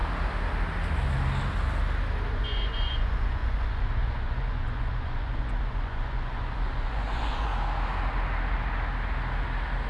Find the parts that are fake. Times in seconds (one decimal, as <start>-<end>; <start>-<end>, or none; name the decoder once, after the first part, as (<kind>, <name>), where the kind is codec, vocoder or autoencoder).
2.3-7.5 (vocoder, Vocos)